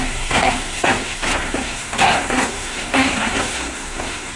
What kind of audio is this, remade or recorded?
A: remade